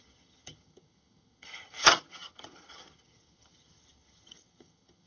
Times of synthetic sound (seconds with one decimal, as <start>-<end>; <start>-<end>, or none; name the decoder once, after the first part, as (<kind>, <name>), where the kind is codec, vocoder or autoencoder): 0.0-5.1 (vocoder, HiFi-GAN)